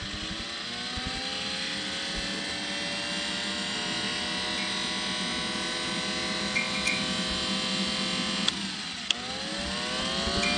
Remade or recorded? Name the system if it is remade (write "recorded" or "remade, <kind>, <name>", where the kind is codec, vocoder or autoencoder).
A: recorded